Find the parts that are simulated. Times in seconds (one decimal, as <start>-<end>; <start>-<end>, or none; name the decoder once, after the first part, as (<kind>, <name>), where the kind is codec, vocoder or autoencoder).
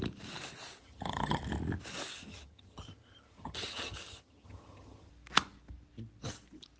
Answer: 0.8-1.4 (vocoder, HiFi-GAN); 2.3-5.1